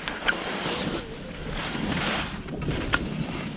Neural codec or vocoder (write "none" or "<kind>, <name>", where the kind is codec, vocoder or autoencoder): none